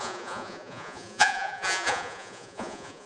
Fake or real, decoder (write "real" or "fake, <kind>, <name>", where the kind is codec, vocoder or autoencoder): fake, vocoder, Vocos